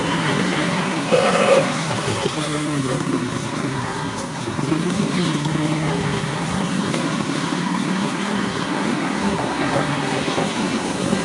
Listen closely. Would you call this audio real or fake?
fake